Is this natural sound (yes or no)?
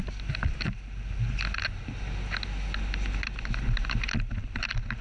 yes